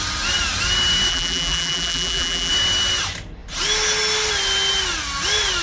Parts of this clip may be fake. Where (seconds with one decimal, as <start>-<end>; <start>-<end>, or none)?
1.1-2.5